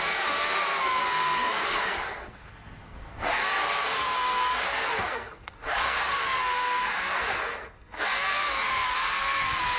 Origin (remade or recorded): remade